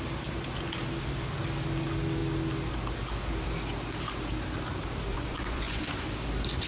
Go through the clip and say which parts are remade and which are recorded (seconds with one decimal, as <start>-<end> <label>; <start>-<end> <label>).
0.0-5.1 recorded; 5.1-5.8 remade; 5.8-6.7 recorded